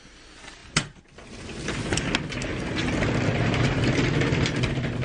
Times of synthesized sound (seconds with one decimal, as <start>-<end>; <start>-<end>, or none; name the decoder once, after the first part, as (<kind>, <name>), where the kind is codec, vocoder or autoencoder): none

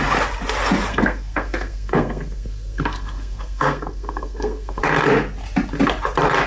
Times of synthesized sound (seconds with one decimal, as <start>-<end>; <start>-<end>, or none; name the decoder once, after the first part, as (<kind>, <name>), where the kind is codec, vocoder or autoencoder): 0.9-4.8 (codec, SNAC)